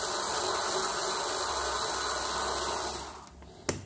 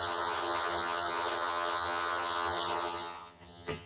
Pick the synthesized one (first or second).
second